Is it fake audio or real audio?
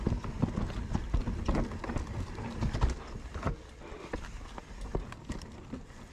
real